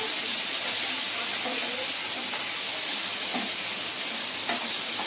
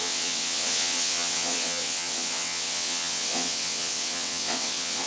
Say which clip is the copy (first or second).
second